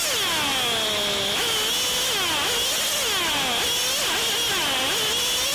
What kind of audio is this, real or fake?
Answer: real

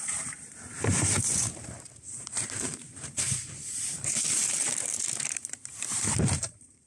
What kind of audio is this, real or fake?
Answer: fake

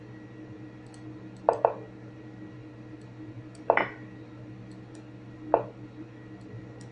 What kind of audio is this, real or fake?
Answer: real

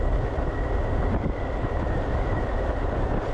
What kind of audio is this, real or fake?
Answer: fake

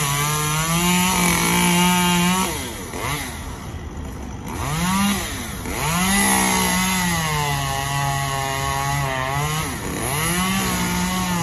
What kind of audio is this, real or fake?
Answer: real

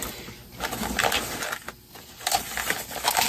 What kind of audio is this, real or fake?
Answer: real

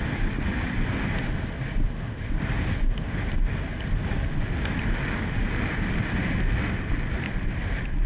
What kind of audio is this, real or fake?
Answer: real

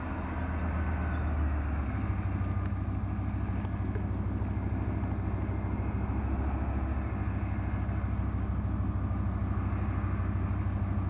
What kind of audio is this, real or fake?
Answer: real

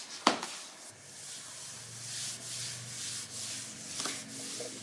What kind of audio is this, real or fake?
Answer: real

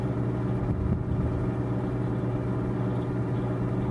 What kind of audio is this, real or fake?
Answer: real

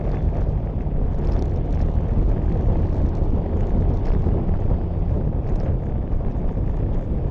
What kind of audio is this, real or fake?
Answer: real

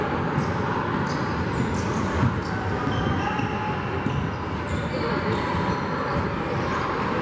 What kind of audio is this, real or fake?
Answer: real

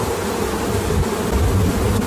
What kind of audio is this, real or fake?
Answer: real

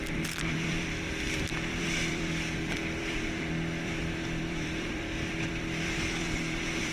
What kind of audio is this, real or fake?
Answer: fake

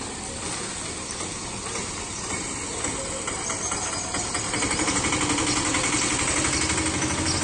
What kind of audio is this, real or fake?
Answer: real